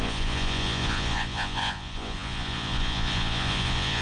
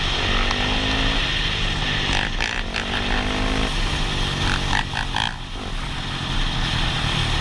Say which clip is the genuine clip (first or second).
second